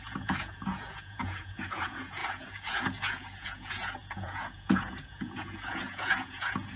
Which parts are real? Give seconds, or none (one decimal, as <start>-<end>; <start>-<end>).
none